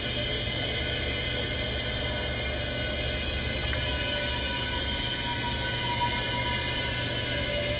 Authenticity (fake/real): real